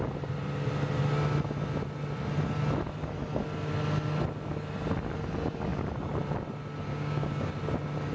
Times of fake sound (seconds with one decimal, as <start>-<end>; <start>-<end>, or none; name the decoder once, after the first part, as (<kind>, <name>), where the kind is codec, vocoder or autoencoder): 6.9-7.5 (codec, DAC)